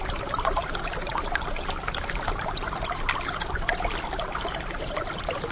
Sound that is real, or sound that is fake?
real